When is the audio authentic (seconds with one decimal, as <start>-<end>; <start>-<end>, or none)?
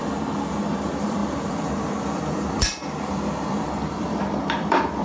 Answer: 0.0-0.7